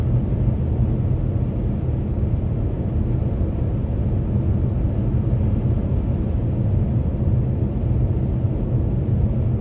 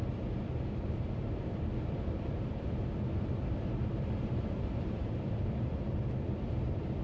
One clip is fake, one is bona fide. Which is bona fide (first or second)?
first